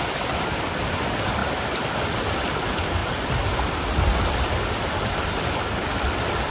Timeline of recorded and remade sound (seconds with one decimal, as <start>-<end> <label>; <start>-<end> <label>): 0.0-3.0 remade; 3.0-3.9 recorded; 3.9-6.5 remade